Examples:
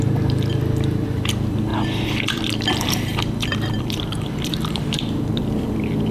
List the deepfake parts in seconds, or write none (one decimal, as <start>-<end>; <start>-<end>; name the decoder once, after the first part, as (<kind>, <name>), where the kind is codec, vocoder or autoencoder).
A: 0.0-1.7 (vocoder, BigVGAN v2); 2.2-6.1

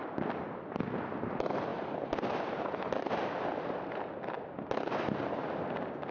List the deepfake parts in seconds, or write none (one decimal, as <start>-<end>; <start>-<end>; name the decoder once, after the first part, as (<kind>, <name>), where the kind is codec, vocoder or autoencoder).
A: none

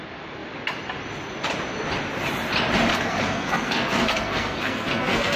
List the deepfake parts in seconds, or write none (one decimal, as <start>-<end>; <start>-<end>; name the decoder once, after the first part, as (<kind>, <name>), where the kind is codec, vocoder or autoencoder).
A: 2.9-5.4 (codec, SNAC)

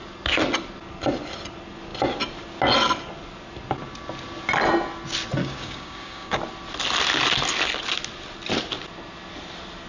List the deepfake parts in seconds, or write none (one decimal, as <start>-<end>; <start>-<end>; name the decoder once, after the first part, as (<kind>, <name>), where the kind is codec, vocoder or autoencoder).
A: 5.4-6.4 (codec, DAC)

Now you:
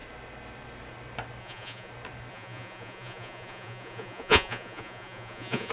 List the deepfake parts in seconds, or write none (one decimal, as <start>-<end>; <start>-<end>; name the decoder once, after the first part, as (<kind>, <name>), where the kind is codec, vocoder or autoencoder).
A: 1.4-1.9 (vocoder, Vocos); 2.3-5.7

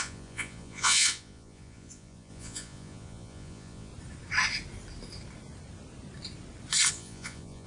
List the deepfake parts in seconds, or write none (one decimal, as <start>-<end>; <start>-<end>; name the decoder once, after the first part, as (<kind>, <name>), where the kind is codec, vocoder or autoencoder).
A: 0.0-3.9 (vocoder, Vocos); 6.9-7.7